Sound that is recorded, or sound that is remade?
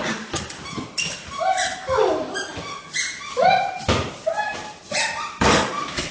recorded